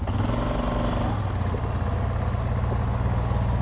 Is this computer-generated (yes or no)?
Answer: no